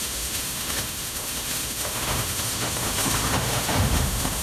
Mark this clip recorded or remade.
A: remade